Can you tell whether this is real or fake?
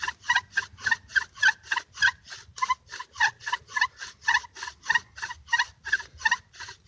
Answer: real